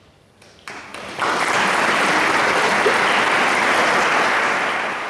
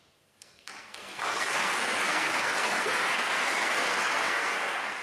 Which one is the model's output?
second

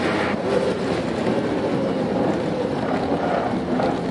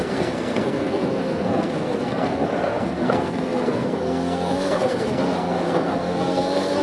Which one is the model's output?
second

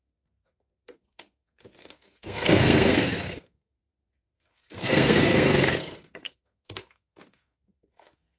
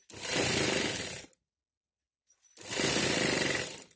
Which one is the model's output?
first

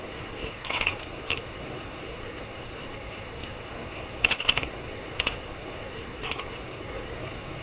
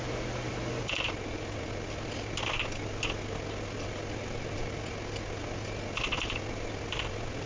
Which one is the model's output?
first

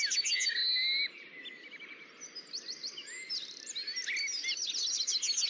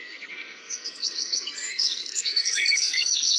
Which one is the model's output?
second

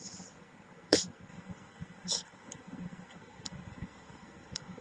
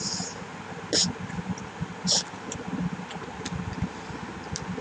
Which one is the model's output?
first